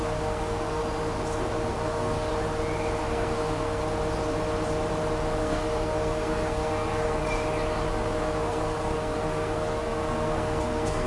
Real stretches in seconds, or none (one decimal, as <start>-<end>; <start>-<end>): 0.8-1.7; 2.3-3.0; 3.8-5.4; 7.2-7.9